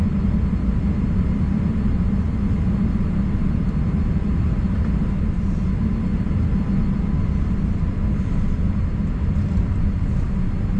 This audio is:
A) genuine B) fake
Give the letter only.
A